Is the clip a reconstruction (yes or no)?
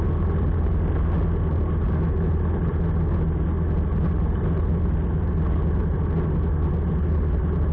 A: no